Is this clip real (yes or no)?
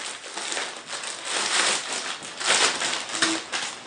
yes